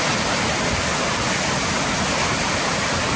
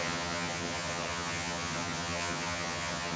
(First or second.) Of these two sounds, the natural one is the first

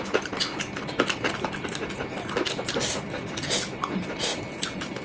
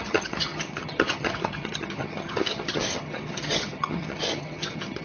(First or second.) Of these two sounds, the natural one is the first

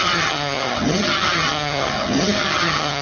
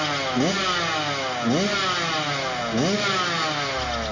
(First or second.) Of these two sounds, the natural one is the second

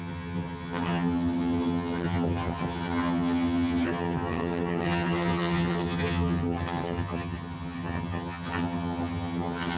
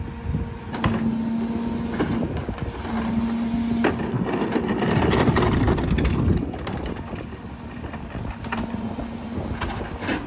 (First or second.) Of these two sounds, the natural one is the second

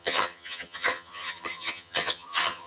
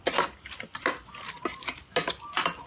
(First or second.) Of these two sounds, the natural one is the second